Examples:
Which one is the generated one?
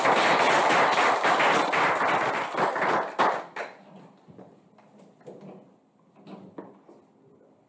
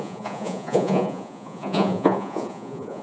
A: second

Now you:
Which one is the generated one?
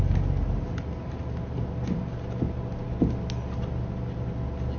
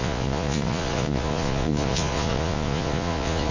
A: second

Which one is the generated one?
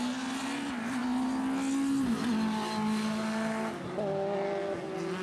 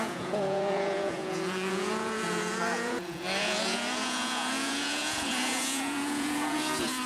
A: second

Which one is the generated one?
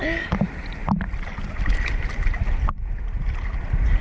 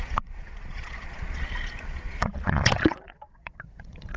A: second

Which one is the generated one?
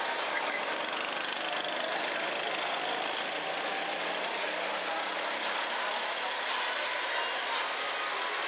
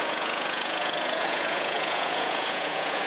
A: second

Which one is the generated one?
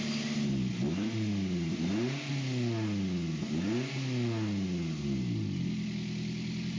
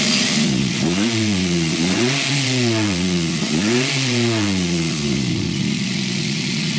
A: second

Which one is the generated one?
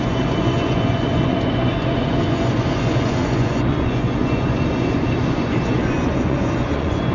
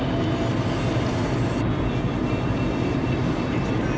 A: first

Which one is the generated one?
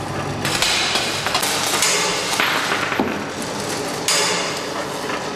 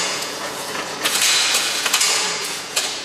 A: second